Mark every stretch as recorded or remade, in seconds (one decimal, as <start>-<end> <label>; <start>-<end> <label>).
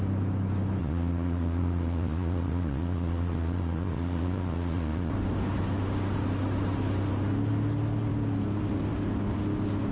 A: 0.0-0.8 recorded; 0.8-5.1 remade; 5.1-9.9 recorded